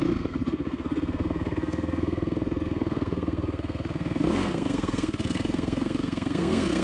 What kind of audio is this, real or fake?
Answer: fake